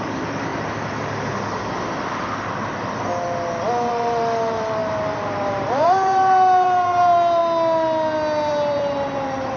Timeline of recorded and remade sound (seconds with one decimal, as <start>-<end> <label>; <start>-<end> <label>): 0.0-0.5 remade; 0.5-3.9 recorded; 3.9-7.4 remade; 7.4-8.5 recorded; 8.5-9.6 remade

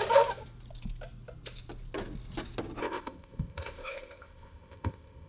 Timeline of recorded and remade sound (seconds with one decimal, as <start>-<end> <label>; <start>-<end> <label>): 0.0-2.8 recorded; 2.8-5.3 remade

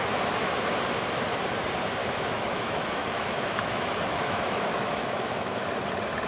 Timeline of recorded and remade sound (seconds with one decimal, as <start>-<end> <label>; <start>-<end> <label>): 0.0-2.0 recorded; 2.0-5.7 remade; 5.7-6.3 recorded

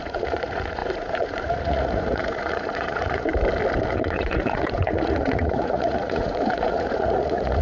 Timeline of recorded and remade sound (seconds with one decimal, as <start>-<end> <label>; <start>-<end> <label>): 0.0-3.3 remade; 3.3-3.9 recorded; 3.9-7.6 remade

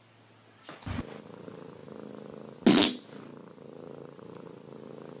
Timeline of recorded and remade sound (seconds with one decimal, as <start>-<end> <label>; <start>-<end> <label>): 0.0-5.2 recorded

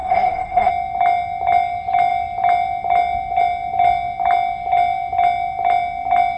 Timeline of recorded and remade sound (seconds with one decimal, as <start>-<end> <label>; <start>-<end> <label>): 0.0-0.7 remade; 0.7-6.4 recorded